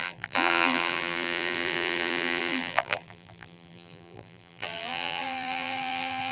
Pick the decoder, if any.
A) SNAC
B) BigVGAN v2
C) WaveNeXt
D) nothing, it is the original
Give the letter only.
B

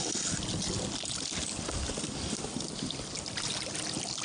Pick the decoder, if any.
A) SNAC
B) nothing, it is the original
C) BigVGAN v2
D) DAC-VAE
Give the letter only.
B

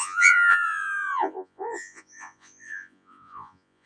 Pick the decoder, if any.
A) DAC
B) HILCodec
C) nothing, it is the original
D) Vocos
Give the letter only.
D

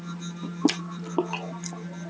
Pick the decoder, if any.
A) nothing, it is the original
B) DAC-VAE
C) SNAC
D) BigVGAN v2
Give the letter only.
A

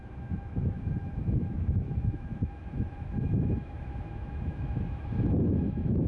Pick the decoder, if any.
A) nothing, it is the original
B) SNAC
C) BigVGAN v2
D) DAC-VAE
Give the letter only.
D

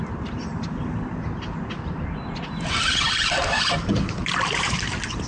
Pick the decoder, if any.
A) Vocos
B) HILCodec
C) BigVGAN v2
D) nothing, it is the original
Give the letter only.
D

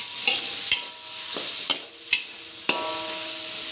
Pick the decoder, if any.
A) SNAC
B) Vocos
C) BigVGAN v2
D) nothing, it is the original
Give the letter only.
D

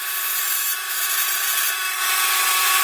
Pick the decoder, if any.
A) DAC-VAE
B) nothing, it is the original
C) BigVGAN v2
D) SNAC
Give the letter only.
C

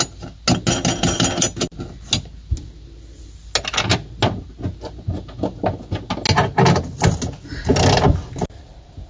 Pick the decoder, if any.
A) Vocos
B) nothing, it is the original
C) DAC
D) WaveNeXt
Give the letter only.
B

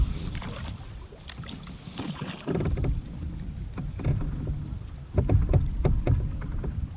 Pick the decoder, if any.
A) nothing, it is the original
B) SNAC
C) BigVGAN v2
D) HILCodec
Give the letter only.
C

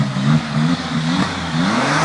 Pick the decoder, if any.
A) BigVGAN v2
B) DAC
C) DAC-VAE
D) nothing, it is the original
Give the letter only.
B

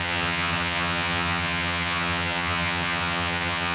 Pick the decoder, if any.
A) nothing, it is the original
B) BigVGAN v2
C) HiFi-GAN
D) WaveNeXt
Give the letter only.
C